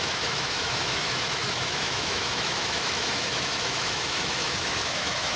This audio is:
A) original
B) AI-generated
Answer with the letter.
B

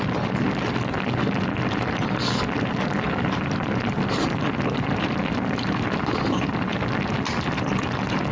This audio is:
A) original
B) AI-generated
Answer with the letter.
A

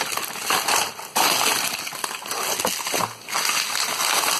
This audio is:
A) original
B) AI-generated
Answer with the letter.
A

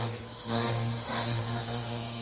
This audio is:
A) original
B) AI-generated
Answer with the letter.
B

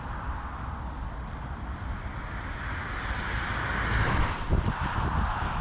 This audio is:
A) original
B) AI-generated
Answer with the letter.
A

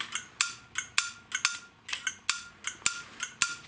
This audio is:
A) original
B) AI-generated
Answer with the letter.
A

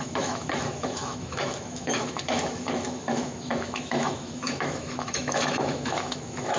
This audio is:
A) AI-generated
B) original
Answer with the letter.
A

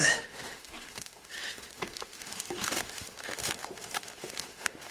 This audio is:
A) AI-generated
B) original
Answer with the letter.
A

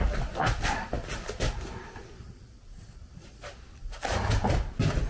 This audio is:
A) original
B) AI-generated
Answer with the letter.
A